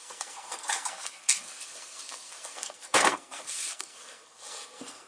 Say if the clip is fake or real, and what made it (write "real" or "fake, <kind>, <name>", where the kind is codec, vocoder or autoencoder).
fake, codec, SNAC